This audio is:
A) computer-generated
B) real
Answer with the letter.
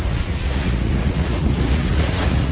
A